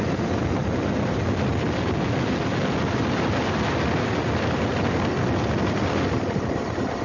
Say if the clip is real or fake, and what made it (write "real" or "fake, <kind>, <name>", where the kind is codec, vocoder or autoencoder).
real